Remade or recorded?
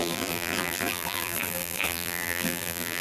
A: remade